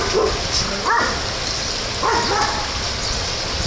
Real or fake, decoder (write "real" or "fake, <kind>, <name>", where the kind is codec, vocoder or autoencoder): real